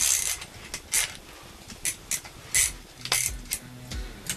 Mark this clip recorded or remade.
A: recorded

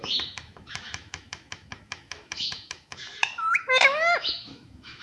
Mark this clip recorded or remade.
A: remade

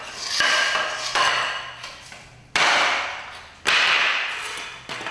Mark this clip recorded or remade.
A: recorded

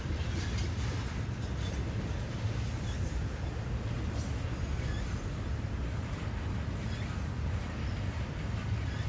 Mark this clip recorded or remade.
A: recorded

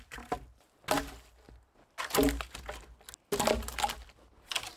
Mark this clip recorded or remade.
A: recorded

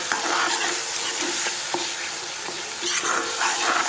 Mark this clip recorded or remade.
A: recorded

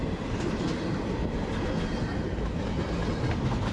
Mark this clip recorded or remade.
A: recorded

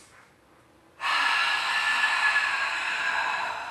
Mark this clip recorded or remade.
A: recorded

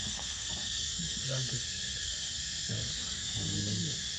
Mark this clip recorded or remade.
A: remade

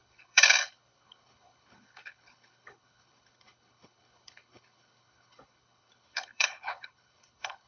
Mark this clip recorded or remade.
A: remade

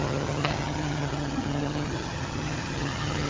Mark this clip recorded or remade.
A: remade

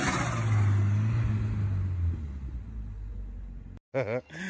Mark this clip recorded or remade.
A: recorded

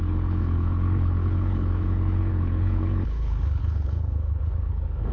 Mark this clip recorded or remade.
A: remade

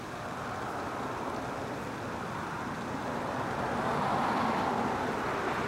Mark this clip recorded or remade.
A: recorded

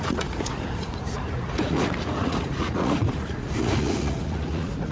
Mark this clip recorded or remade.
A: remade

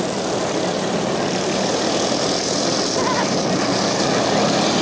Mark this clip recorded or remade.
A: recorded